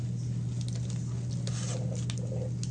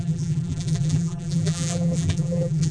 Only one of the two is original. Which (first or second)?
first